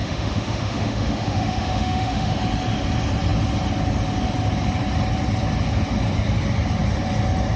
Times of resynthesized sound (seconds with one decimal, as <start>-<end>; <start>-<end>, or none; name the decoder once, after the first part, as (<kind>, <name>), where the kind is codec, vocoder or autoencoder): 0.0-2.4 (autoencoder, DAC-VAE)

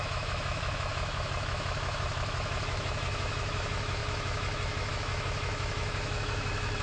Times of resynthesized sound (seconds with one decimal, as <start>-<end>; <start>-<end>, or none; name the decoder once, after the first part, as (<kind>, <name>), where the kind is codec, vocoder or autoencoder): 0.0-6.8 (autoencoder, DAC-VAE)

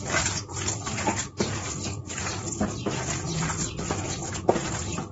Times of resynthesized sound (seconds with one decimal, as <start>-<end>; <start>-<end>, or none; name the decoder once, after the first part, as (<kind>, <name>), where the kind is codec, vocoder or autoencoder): none

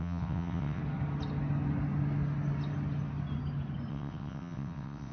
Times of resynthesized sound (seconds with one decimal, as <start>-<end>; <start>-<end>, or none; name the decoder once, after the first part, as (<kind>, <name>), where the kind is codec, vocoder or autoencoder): 0.0-0.8 (vocoder, WaveNeXt); 3.9-5.1

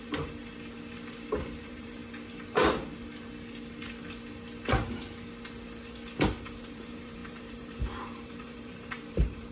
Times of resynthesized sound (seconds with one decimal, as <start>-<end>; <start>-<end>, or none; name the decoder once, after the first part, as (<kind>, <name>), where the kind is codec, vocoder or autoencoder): 0.0-0.4 (vocoder, BigVGAN v2); 1.6-2.0; 6.7-9.5

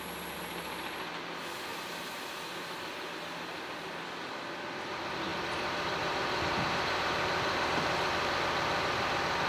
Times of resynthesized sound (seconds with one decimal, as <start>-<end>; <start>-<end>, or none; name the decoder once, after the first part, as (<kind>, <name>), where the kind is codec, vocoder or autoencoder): 1.7-2.6 (vocoder, BigVGAN v2); 5.3-8.9